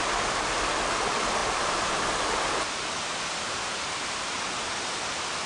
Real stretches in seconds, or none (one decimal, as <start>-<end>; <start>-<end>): 0.0-1.4; 4.7-5.5

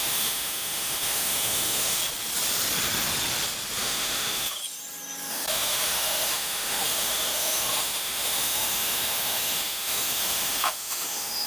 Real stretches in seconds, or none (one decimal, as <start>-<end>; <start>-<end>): 2.0-3.8; 4.6-5.3

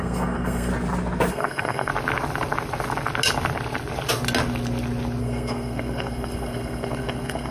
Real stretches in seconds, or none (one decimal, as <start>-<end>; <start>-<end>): 0.7-1.3; 1.9-5.2

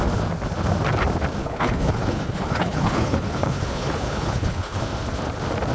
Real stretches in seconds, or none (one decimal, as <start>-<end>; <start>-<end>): 0.0-1.4; 4.8-5.7

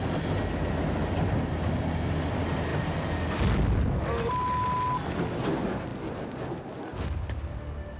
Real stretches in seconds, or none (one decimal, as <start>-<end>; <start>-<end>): 0.0-8.0